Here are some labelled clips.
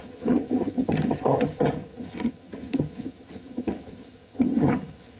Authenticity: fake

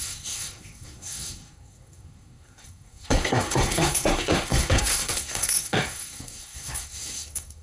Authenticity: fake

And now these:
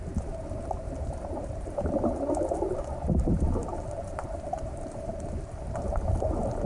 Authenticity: fake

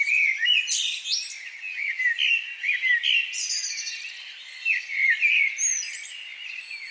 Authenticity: real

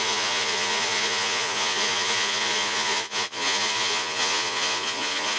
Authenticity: fake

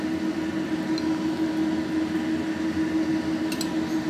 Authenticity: real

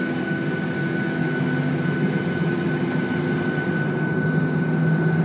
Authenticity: real